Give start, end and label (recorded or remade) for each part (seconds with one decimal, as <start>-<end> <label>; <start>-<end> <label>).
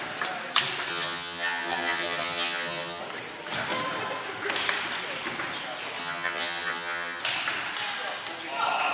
0.0-0.9 recorded; 0.9-3.0 remade; 3.0-6.0 recorded; 6.0-7.2 remade; 7.2-8.9 recorded